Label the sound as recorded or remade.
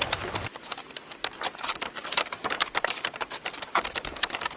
remade